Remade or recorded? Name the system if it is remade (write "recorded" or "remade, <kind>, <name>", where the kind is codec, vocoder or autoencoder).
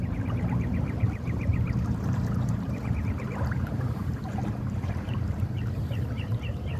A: remade, vocoder, BigVGAN v2